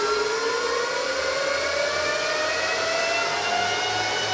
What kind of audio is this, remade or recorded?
recorded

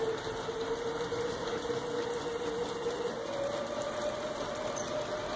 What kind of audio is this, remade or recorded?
recorded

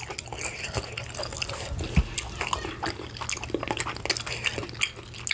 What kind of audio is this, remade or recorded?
recorded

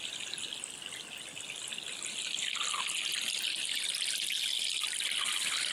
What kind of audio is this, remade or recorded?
recorded